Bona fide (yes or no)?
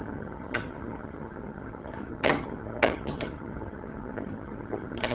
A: no